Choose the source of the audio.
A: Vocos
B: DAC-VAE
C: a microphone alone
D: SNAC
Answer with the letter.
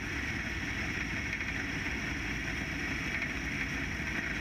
C